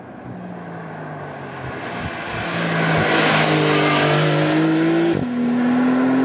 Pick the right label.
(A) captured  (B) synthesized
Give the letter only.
A